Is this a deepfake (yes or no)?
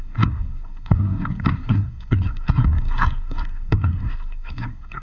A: yes